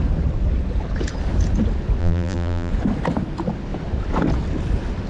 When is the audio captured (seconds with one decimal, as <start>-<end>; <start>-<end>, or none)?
0.0-2.0; 2.7-5.1